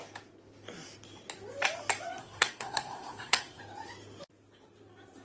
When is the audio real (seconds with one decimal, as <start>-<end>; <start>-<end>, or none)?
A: 0.0-2.2; 3.6-5.2